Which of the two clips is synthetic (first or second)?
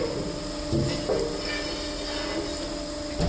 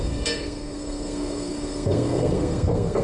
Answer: second